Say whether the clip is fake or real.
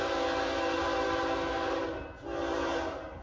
real